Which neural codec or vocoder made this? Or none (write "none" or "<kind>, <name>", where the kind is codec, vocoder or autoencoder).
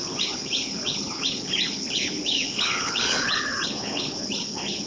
codec, HILCodec